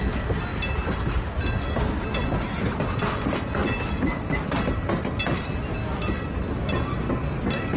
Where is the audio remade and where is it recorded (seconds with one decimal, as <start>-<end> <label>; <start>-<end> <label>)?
0.0-7.8 recorded